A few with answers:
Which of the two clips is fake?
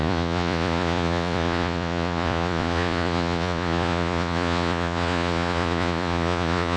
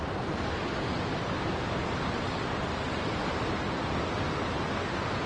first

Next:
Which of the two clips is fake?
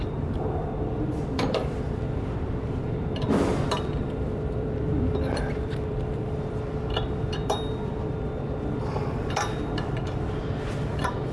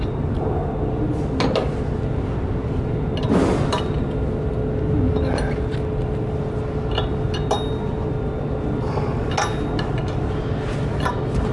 first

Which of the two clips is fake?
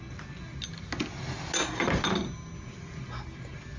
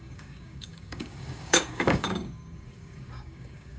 second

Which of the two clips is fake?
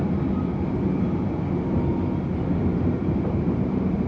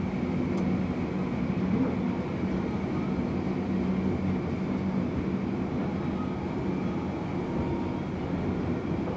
first